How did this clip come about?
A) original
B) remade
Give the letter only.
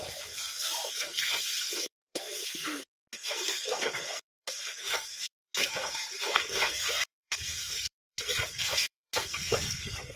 B